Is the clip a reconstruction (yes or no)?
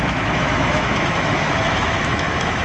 yes